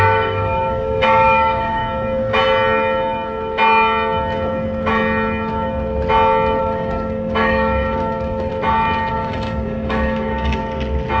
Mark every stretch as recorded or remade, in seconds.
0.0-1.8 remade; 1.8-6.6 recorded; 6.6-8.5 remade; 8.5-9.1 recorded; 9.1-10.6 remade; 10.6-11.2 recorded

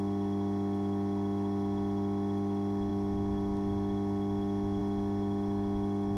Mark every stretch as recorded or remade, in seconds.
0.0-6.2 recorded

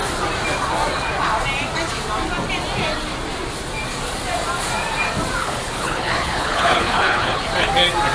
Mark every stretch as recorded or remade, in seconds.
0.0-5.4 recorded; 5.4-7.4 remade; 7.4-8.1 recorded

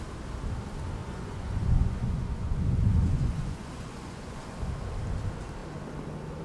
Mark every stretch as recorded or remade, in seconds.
0.0-1.0 recorded; 1.0-4.7 remade; 4.7-6.4 recorded

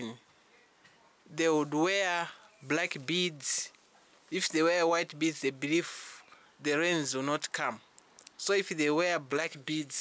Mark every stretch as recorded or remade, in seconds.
0.0-9.3 recorded; 9.3-10.0 remade